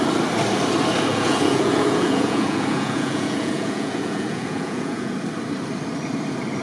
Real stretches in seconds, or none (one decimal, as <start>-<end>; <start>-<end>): 0.0-1.1; 5.1-6.6